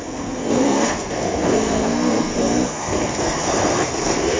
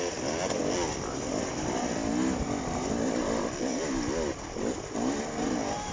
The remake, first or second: first